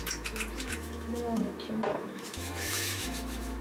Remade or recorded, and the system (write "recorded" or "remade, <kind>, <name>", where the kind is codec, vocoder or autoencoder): remade, autoencoder, DAC-VAE